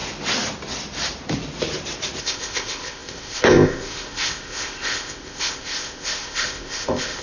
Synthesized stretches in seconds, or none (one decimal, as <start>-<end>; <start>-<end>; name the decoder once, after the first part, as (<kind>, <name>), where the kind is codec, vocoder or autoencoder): 2.2-7.2 (codec, ZipCodec)